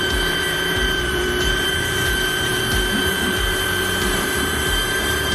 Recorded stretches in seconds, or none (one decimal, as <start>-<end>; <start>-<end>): none